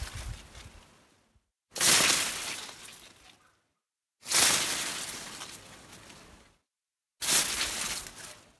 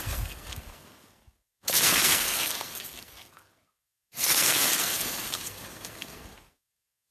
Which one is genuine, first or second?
first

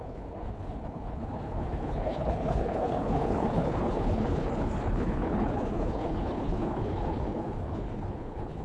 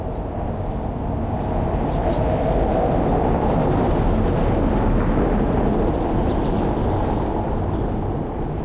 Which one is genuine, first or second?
second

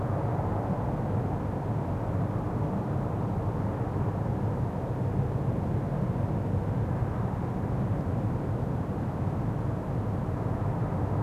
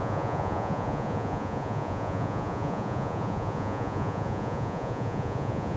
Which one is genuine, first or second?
first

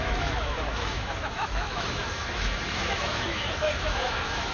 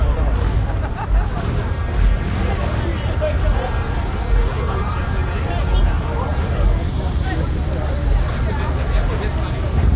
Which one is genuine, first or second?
second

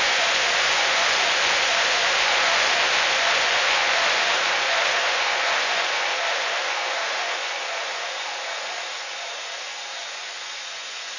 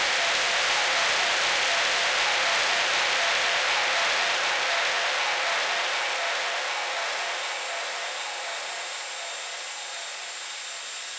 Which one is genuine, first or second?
second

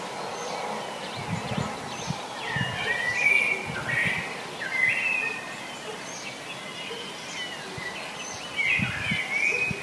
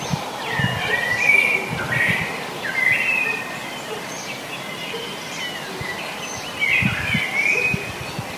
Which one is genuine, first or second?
first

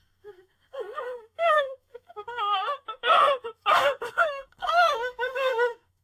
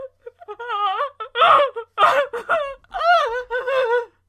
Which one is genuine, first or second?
second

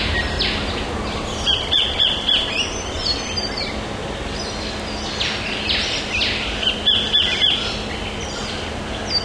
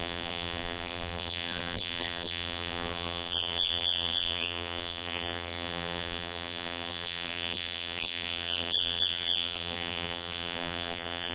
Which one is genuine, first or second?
first